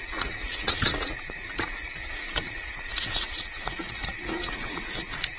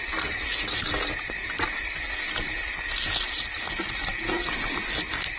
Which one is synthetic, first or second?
first